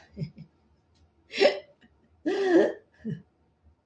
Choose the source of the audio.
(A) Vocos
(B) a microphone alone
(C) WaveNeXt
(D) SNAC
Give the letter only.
B